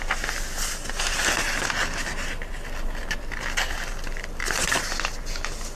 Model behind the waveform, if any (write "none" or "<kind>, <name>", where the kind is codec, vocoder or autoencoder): none